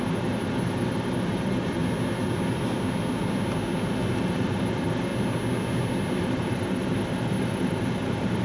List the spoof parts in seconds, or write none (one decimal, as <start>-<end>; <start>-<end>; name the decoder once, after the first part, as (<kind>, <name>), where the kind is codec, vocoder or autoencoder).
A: 0.0-1.8 (vocoder, BigVGAN v2); 4.2-5.1; 6.2-8.4